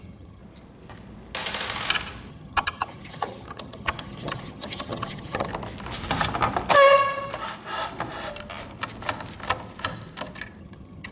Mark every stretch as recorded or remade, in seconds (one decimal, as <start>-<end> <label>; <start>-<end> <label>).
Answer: 0.0-0.4 remade; 0.4-2.3 recorded; 2.3-5.5 remade; 5.5-10.6 recorded; 10.6-11.1 remade